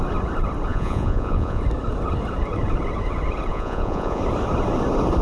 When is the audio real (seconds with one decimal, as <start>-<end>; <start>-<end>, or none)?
0.0-0.7; 1.6-3.5; 4.2-5.2